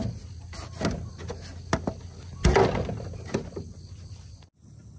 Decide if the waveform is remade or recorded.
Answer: recorded